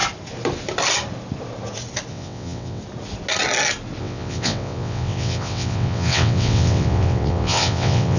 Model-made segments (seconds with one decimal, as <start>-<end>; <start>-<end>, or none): 2.1-2.8; 4.0-8.2